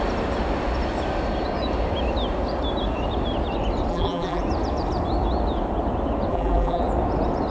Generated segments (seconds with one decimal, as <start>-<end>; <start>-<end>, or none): 3.9-4.4; 6.3-6.8